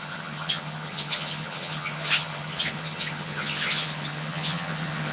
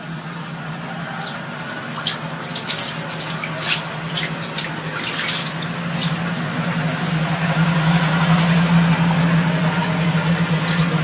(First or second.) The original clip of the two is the second